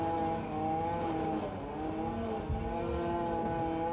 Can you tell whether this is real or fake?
real